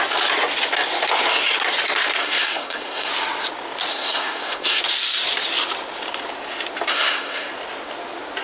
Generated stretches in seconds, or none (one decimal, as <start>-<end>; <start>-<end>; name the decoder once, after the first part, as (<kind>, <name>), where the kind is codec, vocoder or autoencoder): 2.2-3.1 (codec, SNAC); 3.9-4.8; 6.9-7.5